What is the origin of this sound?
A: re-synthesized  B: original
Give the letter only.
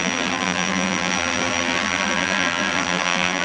A